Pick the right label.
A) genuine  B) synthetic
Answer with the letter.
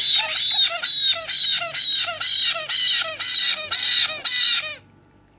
A